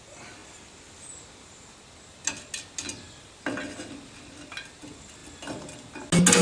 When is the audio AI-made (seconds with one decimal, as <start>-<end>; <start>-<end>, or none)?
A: none